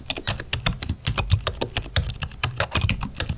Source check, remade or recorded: recorded